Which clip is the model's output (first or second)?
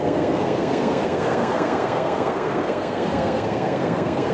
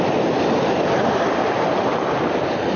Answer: first